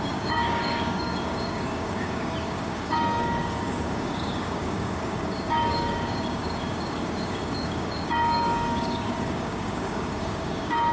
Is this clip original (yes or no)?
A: no